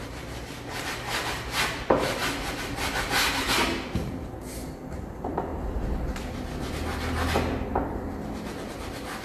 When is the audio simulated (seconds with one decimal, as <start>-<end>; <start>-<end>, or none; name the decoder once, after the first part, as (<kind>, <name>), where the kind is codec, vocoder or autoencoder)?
none